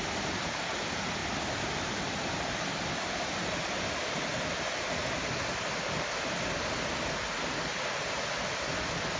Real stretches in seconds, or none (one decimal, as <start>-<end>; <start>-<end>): 0.0-9.2